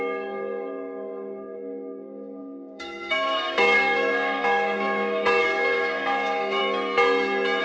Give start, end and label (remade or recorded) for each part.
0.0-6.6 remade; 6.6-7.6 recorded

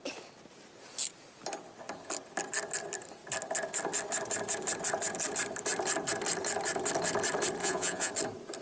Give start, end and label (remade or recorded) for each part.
0.0-7.6 recorded; 7.6-8.1 remade; 8.1-8.6 recorded

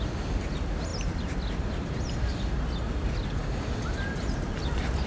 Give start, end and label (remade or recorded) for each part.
0.0-5.1 recorded

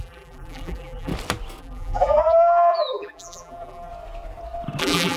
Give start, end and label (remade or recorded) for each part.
0.0-1.1 remade; 1.1-1.6 recorded; 1.6-3.9 remade; 3.9-4.8 recorded; 4.8-5.2 remade

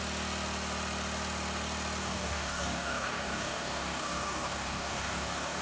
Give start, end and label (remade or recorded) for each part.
0.0-2.0 recorded; 2.0-5.6 remade

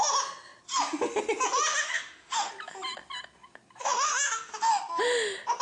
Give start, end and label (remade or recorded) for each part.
0.0-1.7 recorded; 1.7-2.5 remade; 2.5-3.8 recorded; 3.8-4.7 remade; 4.7-5.6 recorded